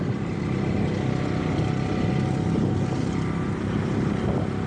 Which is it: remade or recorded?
recorded